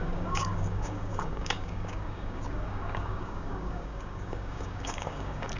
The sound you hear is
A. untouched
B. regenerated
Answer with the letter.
B